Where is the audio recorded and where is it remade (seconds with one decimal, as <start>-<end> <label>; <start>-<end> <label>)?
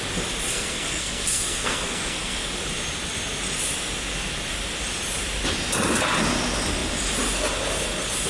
0.0-0.5 recorded; 0.5-2.5 remade; 2.5-8.3 recorded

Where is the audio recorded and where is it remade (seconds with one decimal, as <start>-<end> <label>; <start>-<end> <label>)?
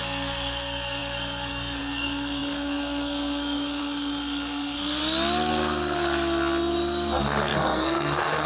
0.0-5.0 remade; 5.0-7.2 recorded; 7.2-8.5 remade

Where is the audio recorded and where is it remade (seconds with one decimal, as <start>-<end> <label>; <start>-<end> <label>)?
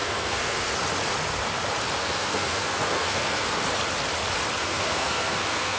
0.0-0.7 remade; 0.7-2.0 recorded; 2.0-3.6 remade; 3.6-4.6 recorded; 4.6-5.8 remade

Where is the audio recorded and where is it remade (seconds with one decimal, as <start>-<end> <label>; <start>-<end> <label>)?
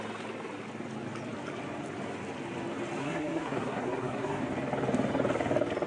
0.0-3.0 recorded; 3.0-4.4 remade; 4.4-5.9 recorded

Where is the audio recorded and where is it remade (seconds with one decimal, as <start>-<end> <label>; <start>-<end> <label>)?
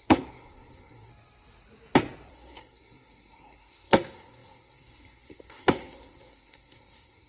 0.0-1.1 remade; 1.1-2.3 recorded; 2.3-7.3 remade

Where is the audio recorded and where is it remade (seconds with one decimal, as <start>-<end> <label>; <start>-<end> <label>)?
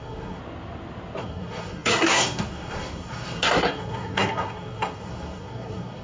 0.0-0.4 remade; 0.4-1.2 recorded; 1.2-6.0 remade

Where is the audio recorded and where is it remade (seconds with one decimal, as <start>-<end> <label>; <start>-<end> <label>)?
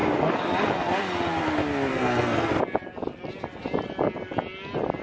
0.0-1.9 recorded; 1.9-2.5 remade; 2.5-5.0 recorded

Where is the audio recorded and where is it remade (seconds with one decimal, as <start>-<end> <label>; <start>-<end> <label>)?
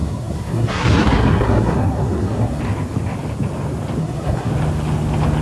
0.0-2.6 remade; 2.6-4.0 recorded; 4.0-4.5 remade; 4.5-5.4 recorded